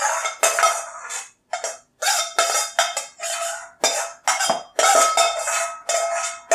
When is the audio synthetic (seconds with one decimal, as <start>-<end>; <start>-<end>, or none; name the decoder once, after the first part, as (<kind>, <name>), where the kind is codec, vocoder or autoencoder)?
none